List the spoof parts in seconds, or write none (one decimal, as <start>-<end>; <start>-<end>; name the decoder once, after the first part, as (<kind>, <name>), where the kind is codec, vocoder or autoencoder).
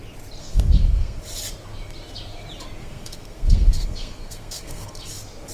0.4-1.2 (codec, SNAC); 2.8-4.9